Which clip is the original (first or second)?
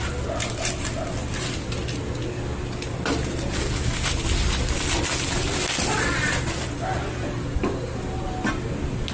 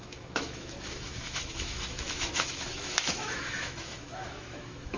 first